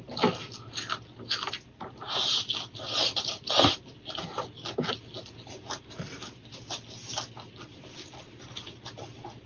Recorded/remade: recorded